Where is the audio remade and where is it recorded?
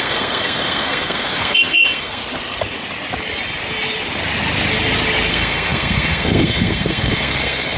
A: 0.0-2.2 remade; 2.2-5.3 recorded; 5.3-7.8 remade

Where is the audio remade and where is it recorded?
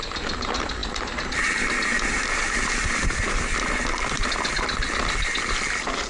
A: 0.0-6.1 recorded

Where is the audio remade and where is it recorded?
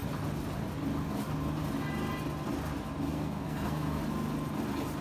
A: 0.0-3.1 recorded; 3.1-4.0 remade; 4.0-5.0 recorded